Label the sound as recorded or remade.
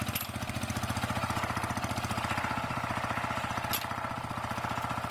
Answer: recorded